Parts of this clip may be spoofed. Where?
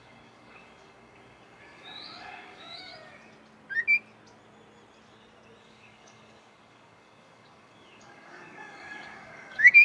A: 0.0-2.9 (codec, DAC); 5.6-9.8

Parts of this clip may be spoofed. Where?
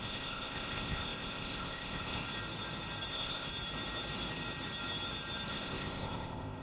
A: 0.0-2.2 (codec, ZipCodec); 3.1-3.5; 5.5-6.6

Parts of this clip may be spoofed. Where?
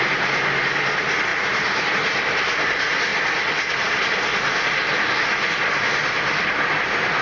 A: 1.3-1.9 (vocoder, BigVGAN v2)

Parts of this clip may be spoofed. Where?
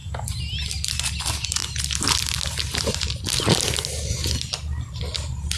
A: none